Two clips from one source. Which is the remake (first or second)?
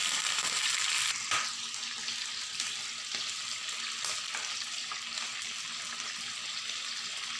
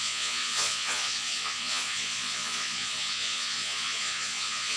second